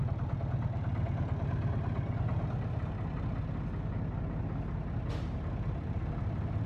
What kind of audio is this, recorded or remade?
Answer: recorded